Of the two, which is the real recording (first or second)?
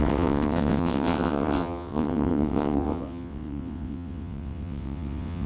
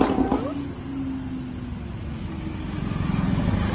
second